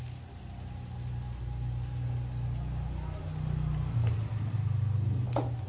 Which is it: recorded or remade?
recorded